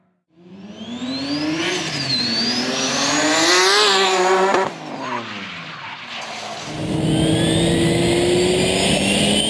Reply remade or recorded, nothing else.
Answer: recorded